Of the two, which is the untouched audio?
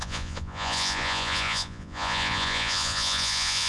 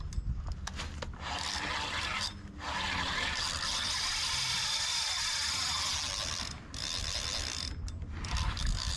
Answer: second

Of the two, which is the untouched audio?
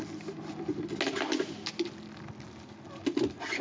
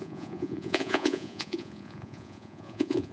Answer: first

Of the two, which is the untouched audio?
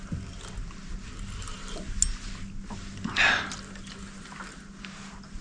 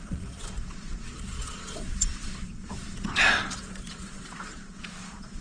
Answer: first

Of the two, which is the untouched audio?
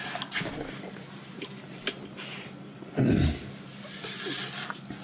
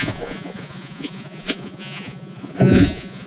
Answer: first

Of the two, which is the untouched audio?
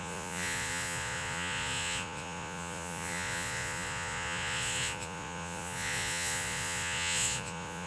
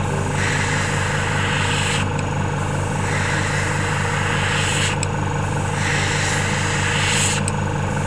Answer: second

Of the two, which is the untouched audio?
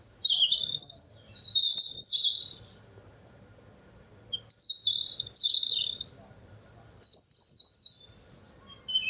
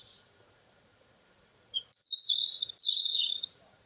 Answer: first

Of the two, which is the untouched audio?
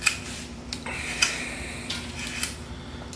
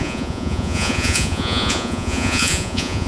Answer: first